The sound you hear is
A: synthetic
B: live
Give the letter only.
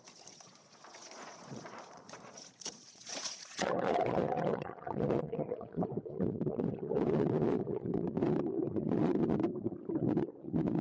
A